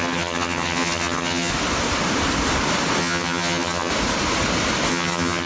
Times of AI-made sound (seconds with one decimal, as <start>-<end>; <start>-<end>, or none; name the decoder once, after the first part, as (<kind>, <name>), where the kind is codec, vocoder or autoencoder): 0.0-1.5 (vocoder, HiFi-GAN); 3.0-3.9; 4.9-5.5